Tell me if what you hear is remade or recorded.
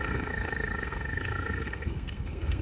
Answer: remade